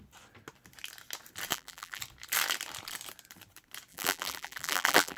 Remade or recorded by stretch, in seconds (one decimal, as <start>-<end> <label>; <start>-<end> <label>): 0.0-1.5 recorded; 1.5-2.0 remade; 2.0-3.9 recorded; 3.9-5.2 remade